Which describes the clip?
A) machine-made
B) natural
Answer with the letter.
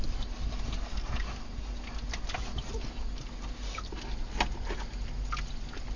B